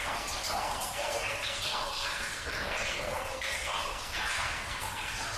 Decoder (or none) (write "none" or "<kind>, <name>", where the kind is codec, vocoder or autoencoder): codec, SNAC